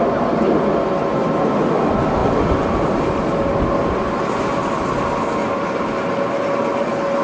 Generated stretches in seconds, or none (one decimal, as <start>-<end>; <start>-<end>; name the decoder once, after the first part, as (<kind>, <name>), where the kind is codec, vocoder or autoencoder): 1.2-1.8 (vocoder, BigVGAN v2); 2.2-3.6; 5.4-5.9